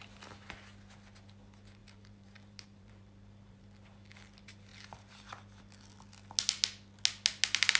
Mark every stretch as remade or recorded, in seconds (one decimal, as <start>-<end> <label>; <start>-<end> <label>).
0.0-1.8 recorded; 1.8-3.6 remade; 3.6-4.7 recorded; 4.7-5.6 remade; 5.6-7.8 recorded